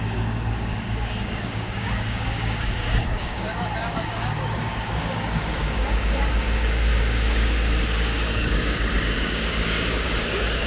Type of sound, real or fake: fake